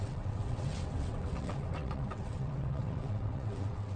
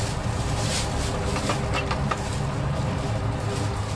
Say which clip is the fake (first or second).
first